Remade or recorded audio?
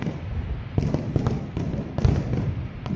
recorded